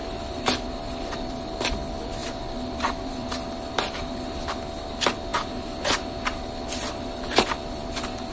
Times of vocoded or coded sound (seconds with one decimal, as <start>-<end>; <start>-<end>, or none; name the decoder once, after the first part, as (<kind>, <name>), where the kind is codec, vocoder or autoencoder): 0.0-1.7 (vocoder, BigVGAN v2); 2.2-3.3